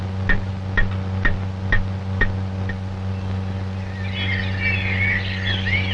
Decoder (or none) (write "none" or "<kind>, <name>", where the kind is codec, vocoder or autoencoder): none